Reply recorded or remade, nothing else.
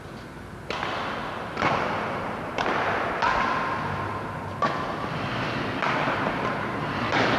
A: recorded